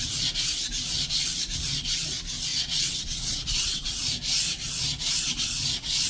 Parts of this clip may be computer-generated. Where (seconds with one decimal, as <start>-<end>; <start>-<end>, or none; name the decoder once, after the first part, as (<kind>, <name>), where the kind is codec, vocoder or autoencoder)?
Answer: 2.5-3.9 (vocoder, WaveNeXt)